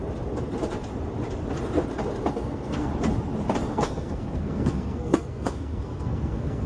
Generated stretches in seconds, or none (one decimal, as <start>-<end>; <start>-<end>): 2.3-2.9; 3.7-6.7